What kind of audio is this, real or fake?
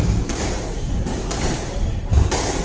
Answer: real